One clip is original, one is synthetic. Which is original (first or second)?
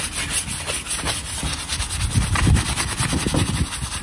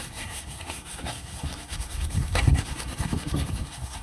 first